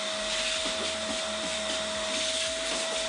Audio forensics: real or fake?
real